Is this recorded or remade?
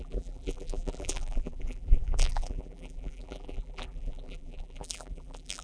remade